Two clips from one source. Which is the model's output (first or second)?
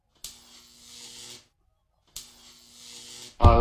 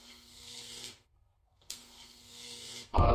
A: second